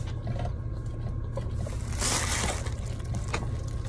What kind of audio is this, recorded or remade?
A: recorded